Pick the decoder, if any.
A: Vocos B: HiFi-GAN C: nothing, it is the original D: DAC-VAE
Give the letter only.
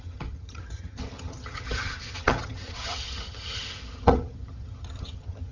B